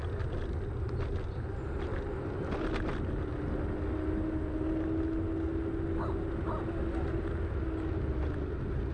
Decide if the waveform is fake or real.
real